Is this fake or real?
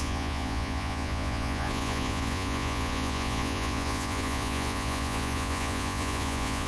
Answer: fake